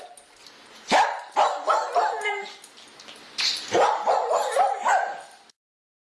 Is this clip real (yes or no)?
yes